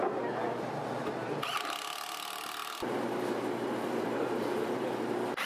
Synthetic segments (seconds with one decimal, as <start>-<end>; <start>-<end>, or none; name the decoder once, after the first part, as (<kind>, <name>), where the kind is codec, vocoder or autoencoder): 2.6-5.0 (vocoder, BigVGAN v2)